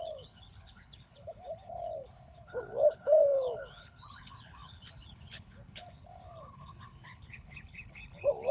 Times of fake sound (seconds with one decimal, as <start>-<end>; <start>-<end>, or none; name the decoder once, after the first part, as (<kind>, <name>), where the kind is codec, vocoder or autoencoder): 0.0-8.5 (codec, HILCodec)